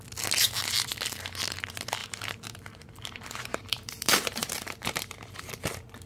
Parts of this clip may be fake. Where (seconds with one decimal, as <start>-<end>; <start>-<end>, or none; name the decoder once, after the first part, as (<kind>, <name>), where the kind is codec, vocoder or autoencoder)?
2.0-5.4 (vocoder, BigVGAN v2)